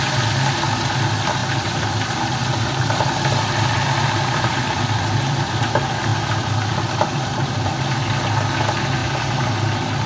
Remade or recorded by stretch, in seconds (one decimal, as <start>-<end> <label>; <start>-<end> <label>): 0.0-1.4 recorded; 1.4-5.6 remade; 5.6-6.1 recorded; 6.1-8.0 remade; 8.0-9.0 recorded; 9.0-10.1 remade